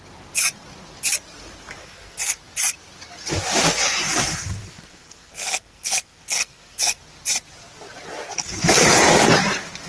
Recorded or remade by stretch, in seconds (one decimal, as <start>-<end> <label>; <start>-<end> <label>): 0.0-1.8 recorded; 1.8-2.4 remade; 2.4-4.6 recorded; 4.6-7.0 remade; 7.0-9.9 recorded